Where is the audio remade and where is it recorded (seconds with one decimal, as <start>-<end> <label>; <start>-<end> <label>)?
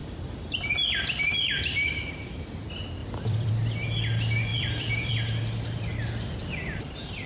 0.0-2.6 remade; 2.6-3.0 recorded; 3.0-3.5 remade; 3.5-4.5 recorded; 4.5-5.1 remade; 5.1-6.4 recorded; 6.4-7.3 remade